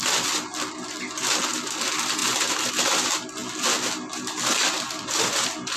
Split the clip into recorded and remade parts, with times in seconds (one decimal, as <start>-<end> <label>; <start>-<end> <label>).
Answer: 0.0-5.8 recorded